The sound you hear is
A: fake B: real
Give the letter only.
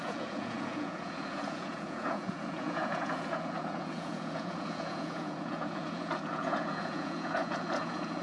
A